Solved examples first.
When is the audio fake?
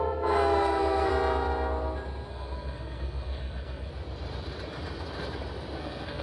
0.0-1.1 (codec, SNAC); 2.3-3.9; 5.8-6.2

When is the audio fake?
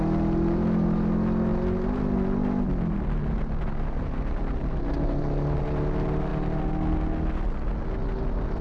none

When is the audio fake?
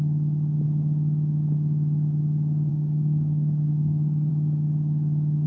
2.7-4.3 (codec, DAC)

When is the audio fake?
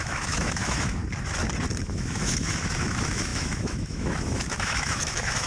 0.0-1.0 (autoencoder, DAC-VAE); 1.8-5.5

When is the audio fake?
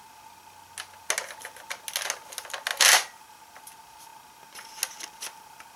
none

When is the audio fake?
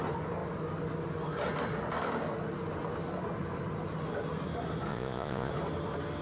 4.9-5.5 (vocoder, Vocos)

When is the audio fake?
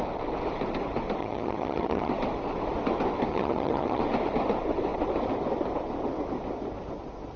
1.2-2.1 (vocoder, HiFi-GAN); 3.3-4.0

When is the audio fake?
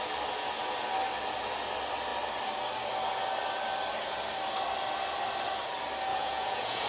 6.1-6.9 (vocoder, Vocos)